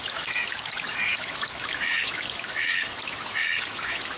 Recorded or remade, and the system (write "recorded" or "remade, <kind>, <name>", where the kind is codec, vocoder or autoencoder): remade, autoencoder, DAC-VAE